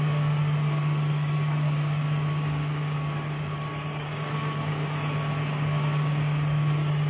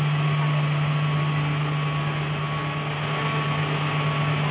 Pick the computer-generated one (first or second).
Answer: first